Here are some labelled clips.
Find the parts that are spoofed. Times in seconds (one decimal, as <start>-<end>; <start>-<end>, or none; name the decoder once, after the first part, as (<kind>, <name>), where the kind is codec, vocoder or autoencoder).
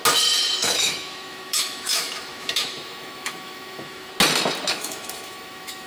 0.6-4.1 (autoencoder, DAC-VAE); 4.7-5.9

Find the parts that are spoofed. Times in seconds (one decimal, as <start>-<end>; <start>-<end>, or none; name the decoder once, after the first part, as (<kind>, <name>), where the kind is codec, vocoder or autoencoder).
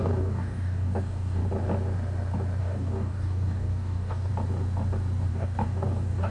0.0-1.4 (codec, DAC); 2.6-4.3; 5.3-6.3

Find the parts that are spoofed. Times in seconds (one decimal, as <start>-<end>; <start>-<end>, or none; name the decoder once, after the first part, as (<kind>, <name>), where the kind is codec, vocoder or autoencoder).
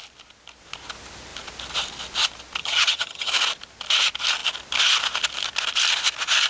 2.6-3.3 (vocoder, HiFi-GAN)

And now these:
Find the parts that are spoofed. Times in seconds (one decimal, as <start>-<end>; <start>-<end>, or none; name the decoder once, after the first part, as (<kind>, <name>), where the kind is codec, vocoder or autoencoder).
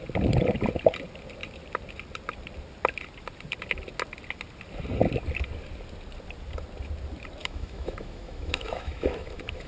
7.4-9.7 (autoencoder, DAC-VAE)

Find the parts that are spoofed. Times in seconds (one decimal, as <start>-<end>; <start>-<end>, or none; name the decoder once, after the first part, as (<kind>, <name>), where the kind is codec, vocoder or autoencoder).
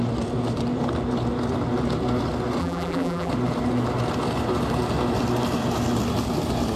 2.6-3.3 (vocoder, BigVGAN v2)